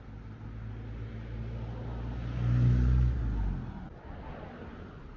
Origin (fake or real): real